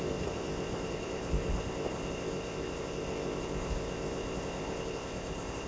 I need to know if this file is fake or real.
fake